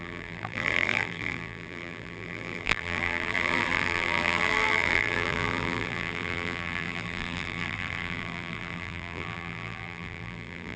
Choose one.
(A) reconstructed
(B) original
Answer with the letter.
A